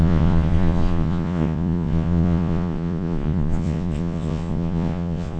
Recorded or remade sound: remade